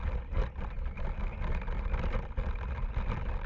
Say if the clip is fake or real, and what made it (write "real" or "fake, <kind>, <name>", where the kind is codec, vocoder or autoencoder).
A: real